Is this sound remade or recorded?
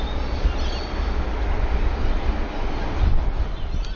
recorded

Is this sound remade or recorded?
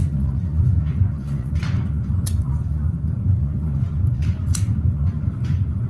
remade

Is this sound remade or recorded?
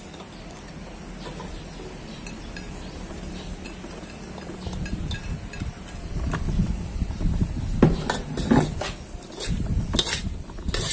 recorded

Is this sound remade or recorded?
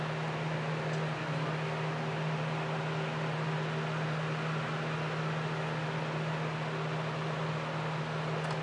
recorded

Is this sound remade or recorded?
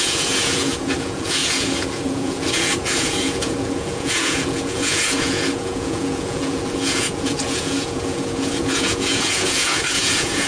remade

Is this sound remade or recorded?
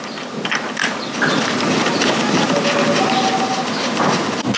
recorded